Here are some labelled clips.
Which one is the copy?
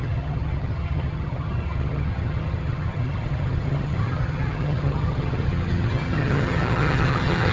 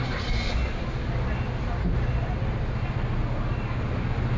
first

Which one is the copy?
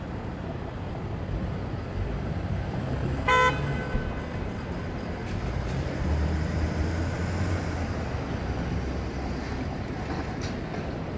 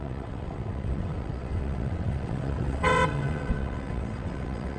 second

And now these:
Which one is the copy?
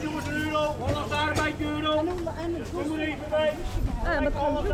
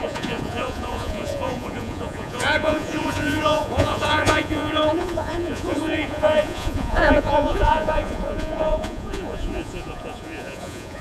second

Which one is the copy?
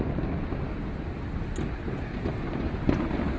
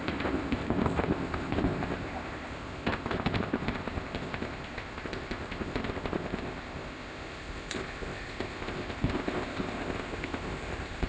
second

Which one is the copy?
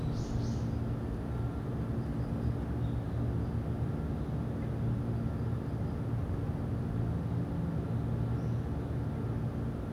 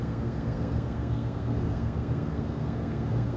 second